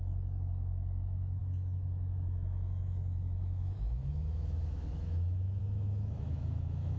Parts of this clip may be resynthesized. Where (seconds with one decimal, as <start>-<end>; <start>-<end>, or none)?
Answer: 0.0-7.0